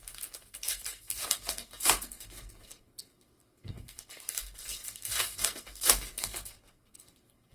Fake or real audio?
fake